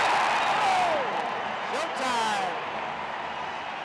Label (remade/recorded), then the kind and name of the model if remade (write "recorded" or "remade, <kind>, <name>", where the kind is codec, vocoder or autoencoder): recorded